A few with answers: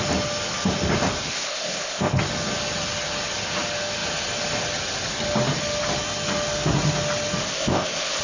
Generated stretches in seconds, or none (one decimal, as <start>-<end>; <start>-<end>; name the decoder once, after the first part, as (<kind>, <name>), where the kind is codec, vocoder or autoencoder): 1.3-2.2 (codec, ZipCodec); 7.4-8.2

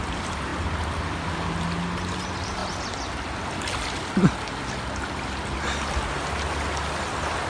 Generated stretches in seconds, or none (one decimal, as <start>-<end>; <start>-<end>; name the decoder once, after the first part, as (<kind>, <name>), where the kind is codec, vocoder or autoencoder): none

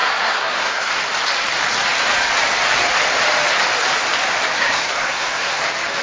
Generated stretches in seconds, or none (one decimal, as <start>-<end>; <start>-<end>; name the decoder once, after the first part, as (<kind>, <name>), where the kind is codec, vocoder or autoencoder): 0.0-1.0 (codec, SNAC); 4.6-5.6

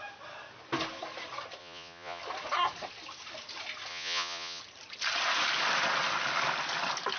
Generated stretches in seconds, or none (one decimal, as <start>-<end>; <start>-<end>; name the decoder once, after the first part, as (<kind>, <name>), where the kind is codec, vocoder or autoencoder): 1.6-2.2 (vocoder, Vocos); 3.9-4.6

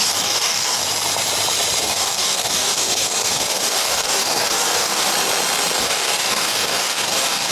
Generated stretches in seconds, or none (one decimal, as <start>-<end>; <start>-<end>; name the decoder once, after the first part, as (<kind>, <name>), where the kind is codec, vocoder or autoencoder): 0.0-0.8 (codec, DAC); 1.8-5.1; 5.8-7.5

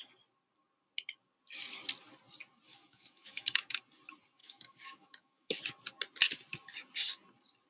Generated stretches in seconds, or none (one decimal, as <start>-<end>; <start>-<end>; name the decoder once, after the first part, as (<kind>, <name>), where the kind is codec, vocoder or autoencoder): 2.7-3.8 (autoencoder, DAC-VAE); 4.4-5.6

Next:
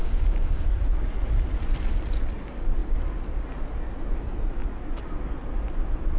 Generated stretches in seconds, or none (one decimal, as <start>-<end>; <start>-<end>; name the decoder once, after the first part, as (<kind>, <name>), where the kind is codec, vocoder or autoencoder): 0.0-0.6 (codec, DAC)

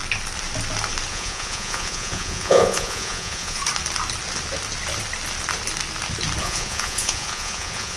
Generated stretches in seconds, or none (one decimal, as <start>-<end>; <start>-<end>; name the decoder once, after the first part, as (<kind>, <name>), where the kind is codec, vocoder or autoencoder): 1.1-3.6 (vocoder, Vocos); 6.4-8.0